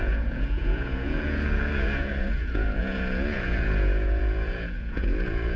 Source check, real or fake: fake